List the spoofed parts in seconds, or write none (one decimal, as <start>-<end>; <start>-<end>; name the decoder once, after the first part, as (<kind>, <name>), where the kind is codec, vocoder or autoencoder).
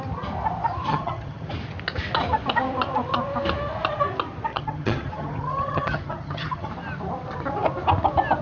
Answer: 0.9-1.5 (vocoder, HiFi-GAN); 4.5-6.7